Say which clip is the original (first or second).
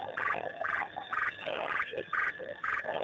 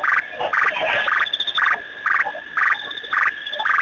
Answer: second